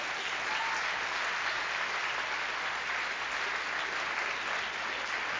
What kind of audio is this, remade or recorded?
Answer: recorded